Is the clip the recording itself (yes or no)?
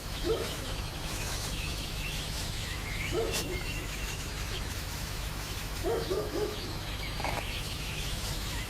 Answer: no